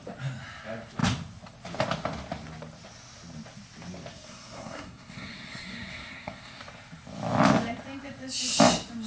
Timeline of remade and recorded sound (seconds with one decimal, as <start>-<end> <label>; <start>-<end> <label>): 0.0-4.1 recorded; 4.1-6.6 remade; 6.6-9.1 recorded